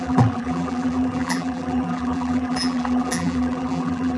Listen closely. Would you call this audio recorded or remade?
remade